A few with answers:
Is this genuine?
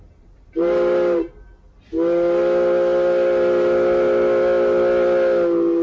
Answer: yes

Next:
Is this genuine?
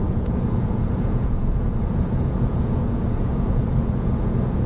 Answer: no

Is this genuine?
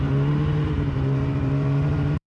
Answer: no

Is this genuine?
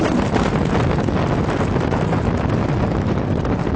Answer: yes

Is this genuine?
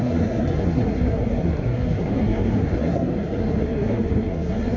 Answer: no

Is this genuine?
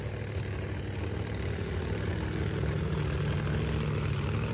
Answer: yes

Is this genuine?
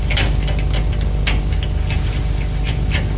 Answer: yes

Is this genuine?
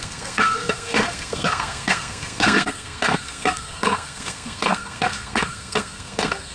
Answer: no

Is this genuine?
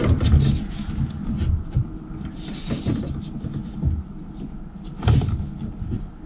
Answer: yes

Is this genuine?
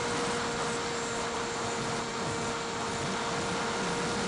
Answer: yes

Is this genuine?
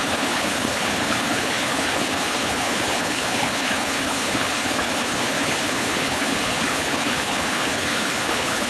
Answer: no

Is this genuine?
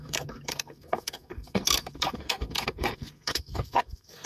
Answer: no